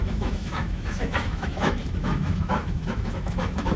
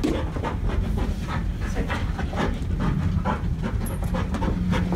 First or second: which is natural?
second